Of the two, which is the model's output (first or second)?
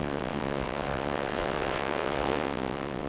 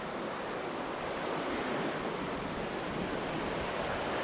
first